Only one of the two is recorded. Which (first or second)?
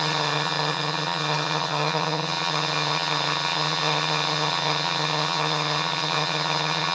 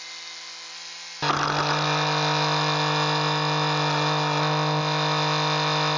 second